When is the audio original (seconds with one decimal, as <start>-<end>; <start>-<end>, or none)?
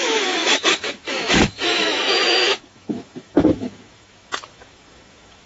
none